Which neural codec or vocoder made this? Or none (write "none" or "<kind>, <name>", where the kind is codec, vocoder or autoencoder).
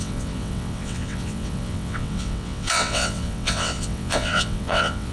vocoder, WaveNeXt